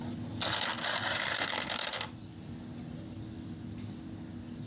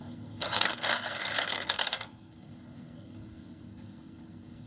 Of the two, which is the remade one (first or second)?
second